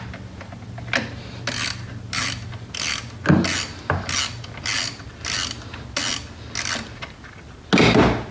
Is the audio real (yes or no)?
yes